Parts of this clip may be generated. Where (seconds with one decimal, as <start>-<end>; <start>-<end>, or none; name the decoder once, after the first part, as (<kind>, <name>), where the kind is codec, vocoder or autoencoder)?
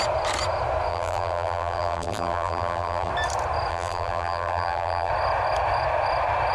0.9-3.1 (vocoder, BigVGAN v2); 3.7-5.1